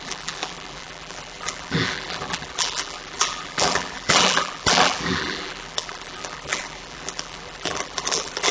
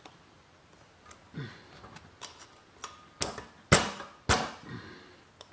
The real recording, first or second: second